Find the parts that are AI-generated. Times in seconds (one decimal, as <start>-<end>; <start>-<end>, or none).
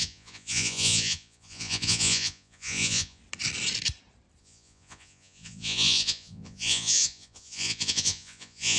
0.0-3.2; 4.4-8.8